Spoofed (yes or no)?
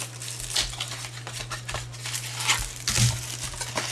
no